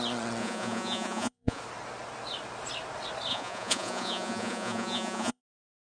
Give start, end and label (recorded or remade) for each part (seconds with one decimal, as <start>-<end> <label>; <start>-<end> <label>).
0.0-0.4 recorded; 0.4-1.6 remade; 1.6-3.3 recorded; 3.3-5.4 remade; 5.4-5.9 recorded